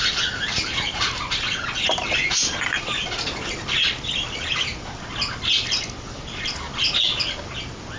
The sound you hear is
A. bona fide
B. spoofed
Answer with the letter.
A